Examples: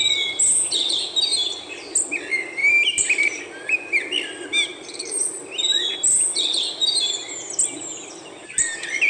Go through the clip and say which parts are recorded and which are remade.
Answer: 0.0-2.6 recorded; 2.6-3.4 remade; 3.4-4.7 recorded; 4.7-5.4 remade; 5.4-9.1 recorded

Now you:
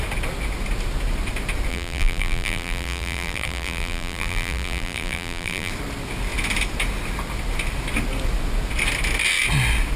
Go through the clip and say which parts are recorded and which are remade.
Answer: 0.0-1.7 recorded; 1.7-5.7 remade; 5.7-10.0 recorded

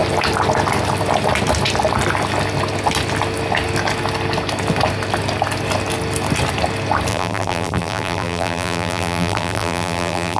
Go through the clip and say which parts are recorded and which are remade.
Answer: 0.0-7.1 recorded; 7.1-10.4 remade

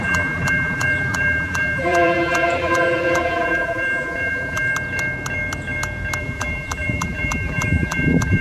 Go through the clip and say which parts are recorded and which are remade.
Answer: 0.0-4.7 remade; 4.7-6.2 recorded; 6.2-8.4 remade

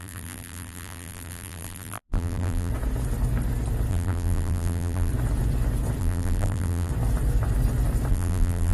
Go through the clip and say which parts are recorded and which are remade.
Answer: 0.0-2.7 remade; 2.7-3.9 recorded; 3.9-5.1 remade; 5.1-6.0 recorded; 6.0-6.9 remade; 6.9-8.1 recorded; 8.1-8.7 remade